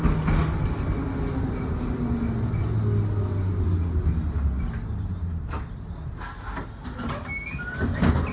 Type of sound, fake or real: real